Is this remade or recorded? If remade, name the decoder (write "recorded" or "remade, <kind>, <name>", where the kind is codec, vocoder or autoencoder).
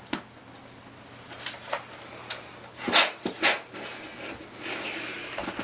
recorded